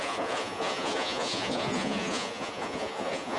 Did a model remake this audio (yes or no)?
yes